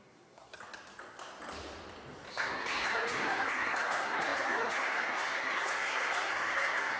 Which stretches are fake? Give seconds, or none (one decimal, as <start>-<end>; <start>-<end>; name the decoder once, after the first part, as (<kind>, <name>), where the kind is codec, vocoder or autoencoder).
0.0-0.5 (codec, SNAC); 2.3-7.0